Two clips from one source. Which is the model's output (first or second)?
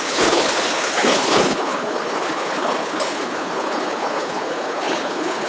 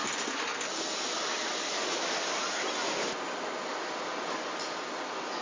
first